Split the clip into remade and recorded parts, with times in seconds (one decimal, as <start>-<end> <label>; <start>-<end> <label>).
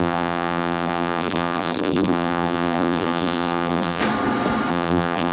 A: 0.0-4.0 remade; 4.0-4.7 recorded; 4.7-5.3 remade